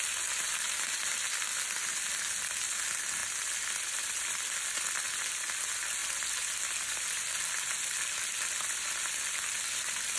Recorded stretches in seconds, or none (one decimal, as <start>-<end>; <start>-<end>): 0.0-10.2